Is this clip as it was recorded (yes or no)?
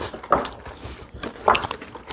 yes